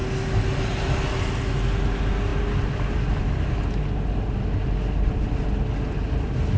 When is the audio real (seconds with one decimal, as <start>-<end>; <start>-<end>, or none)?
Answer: 0.0-6.6